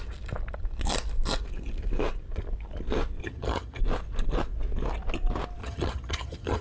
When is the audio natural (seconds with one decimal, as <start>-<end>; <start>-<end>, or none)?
0.0-3.2; 3.8-5.6

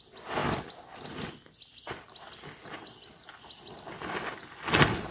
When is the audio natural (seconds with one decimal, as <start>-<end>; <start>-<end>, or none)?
0.0-5.1

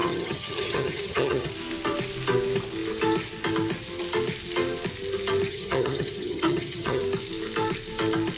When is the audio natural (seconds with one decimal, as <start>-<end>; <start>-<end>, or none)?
1.5-5.5; 7.0-8.4

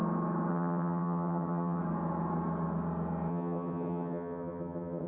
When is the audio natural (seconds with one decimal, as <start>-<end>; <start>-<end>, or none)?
0.0-0.5; 1.8-3.3

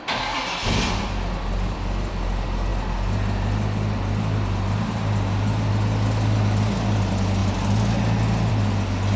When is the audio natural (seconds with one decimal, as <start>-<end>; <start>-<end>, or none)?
0.0-9.2

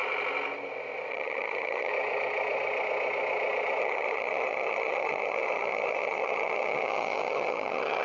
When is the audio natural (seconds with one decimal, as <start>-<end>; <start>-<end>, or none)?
0.0-1.1; 1.9-3.8

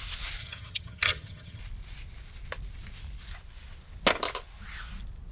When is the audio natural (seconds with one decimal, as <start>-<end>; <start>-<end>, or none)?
0.0-0.4; 1.6-5.3

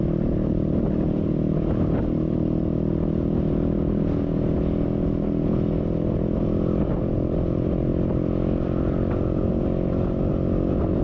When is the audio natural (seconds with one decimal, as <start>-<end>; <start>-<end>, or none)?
0.0-11.0